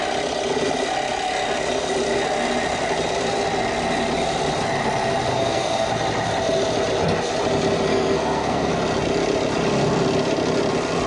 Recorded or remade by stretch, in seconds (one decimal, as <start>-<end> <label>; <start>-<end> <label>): 0.0-5.3 recorded; 5.3-5.9 remade; 5.9-7.9 recorded; 7.9-8.7 remade; 8.7-11.1 recorded